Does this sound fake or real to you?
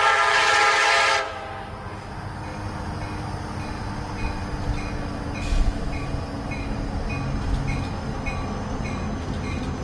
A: real